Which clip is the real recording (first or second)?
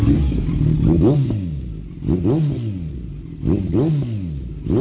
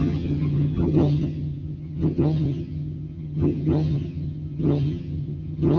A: first